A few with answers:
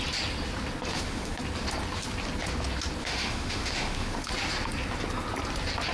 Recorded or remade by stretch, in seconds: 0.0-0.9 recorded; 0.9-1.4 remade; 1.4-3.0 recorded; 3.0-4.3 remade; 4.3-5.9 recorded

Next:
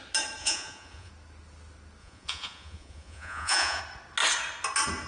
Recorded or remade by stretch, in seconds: 0.0-0.4 recorded; 0.4-1.1 remade; 1.1-2.0 recorded; 2.0-3.8 remade; 3.8-5.1 recorded

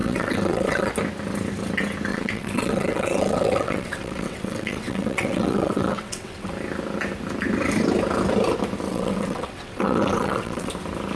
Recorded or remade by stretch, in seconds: 0.0-0.9 remade; 0.9-2.1 recorded; 2.1-6.5 remade; 6.5-8.9 recorded; 8.9-10.7 remade; 10.7-11.2 recorded

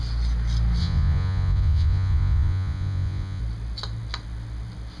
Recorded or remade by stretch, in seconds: 0.0-0.8 recorded; 0.8-3.4 remade; 3.4-5.0 recorded

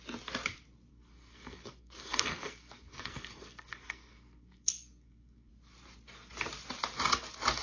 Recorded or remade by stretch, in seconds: 0.0-0.9 recorded; 0.9-5.5 remade; 5.5-7.6 recorded

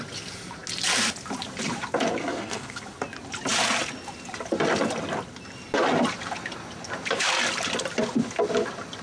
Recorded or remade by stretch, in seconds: 0.0-2.2 recorded; 2.2-2.8 remade; 2.8-9.0 recorded

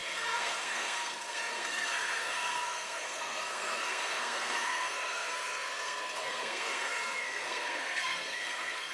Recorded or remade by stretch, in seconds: 0.0-8.9 remade

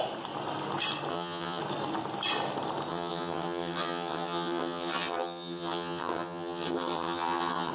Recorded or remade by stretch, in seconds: 0.0-1.1 recorded; 1.1-1.6 remade; 1.6-2.9 recorded; 2.9-7.7 remade